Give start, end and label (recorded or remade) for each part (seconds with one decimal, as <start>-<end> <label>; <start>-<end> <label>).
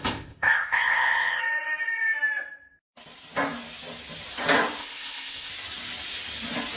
0.0-1.4 remade; 1.4-4.8 recorded; 4.8-5.5 remade; 5.5-6.8 recorded